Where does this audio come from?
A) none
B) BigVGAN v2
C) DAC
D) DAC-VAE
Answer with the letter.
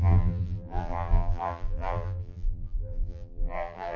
B